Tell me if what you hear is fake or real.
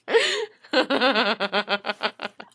real